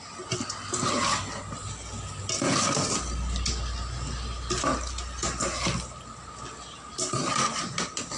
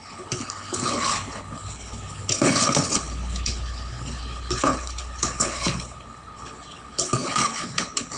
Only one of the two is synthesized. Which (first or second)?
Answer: second